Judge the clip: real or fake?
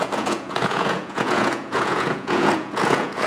fake